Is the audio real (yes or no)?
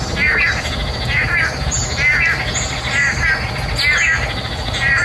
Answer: yes